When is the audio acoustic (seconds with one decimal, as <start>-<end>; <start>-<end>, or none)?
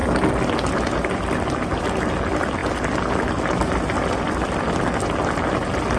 0.0-6.0